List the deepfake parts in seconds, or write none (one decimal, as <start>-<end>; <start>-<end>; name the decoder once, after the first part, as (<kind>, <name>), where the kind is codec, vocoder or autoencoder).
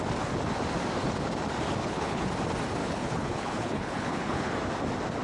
1.8-2.3 (codec, HILCodec); 2.8-4.5